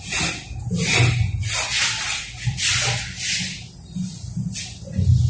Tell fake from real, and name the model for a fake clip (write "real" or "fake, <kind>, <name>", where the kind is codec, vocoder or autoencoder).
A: real